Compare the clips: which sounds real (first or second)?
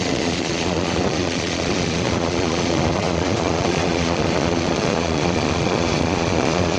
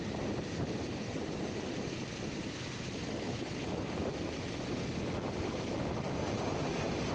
second